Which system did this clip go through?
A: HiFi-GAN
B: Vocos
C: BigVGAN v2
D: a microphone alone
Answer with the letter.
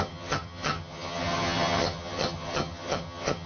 A